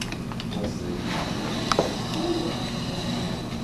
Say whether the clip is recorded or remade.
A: recorded